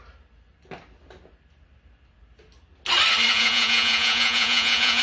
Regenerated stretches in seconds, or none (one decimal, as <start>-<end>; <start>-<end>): 3.3-5.0